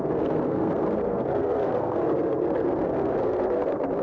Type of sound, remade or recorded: remade